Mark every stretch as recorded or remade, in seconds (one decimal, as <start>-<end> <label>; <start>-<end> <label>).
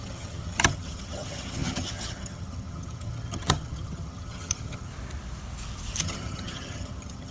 0.0-4.9 remade; 4.9-6.0 recorded; 6.0-7.3 remade